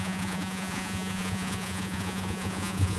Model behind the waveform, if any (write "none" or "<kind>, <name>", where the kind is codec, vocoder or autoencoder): vocoder, Vocos